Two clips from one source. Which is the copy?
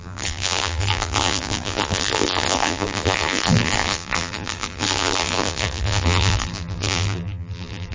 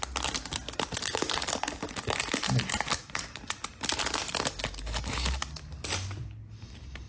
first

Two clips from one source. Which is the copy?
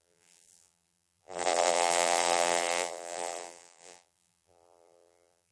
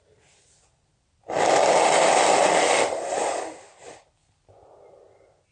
first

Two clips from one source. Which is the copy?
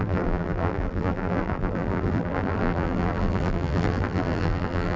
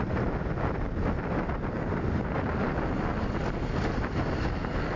first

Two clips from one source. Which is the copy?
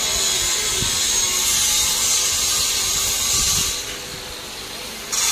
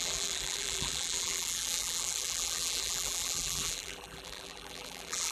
second